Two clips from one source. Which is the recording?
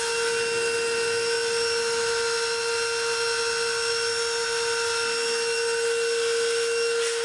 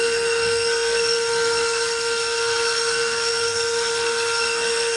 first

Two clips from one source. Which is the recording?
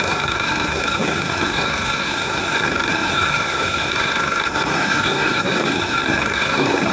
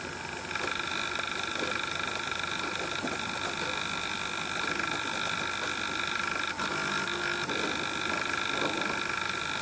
second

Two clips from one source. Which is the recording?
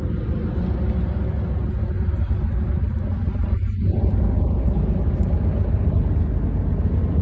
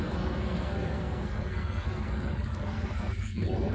first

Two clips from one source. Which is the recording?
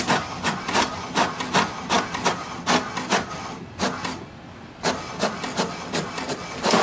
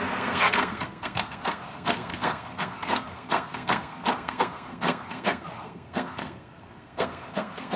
first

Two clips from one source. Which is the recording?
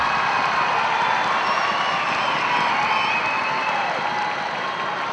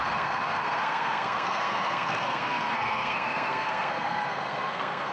first